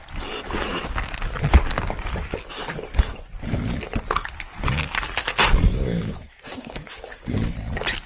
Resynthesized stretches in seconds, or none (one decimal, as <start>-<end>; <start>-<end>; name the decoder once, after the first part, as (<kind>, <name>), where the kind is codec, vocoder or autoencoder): 5.7-7.5 (codec, DAC)

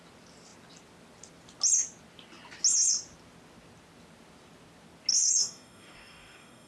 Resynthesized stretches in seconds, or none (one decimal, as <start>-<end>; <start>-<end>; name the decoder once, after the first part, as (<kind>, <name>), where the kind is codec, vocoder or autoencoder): 5.1-6.7 (codec, DAC)

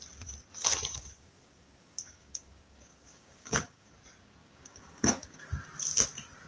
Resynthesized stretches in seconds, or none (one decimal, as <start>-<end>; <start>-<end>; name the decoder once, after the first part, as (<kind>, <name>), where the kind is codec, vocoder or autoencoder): 1.0-3.9 (codec, DAC); 4.4-5.5

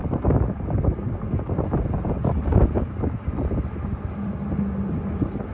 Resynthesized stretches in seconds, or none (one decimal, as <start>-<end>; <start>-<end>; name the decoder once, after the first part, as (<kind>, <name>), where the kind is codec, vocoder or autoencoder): none

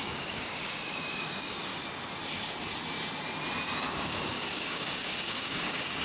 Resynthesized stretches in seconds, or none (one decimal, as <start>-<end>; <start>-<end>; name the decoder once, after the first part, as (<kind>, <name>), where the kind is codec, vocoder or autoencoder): 0.0-1.7 (codec, DAC); 4.0-6.0

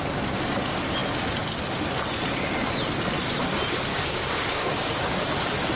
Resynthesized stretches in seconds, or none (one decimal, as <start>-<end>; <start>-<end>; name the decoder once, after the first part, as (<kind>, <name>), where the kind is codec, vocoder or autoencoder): 3.9-5.3 (codec, DAC)

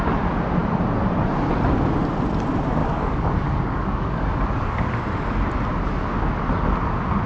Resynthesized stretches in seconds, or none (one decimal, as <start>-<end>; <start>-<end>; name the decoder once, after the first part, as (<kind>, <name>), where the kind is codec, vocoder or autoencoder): 2.8-5.0 (codec, DAC)